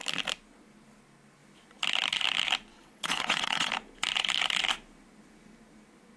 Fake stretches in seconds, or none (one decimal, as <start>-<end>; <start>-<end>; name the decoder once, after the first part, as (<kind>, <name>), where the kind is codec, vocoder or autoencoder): 2.7-3.7 (vocoder, WaveNeXt)